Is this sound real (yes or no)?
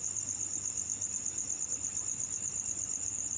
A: yes